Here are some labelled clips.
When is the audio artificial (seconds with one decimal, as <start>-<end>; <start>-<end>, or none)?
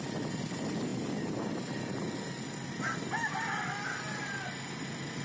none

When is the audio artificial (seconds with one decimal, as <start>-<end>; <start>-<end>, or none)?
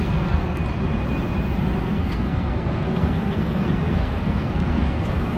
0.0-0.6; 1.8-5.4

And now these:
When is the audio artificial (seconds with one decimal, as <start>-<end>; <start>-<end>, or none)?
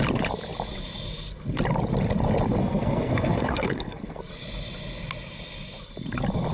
2.6-4.2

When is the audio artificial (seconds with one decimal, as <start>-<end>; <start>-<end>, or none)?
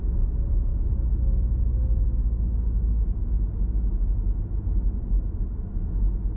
none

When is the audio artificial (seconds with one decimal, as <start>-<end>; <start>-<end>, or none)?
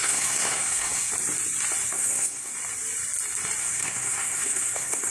0.0-1.1; 1.9-2.5; 3.6-5.1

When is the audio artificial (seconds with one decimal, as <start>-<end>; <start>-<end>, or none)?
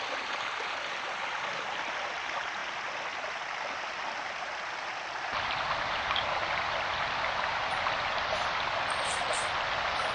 none